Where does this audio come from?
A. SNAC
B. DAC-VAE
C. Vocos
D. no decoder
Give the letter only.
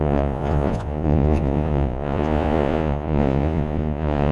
C